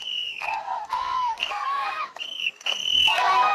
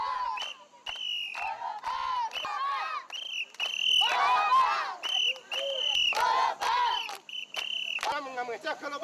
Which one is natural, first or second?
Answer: second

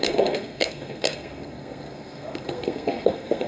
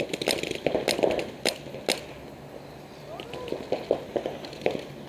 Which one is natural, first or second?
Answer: second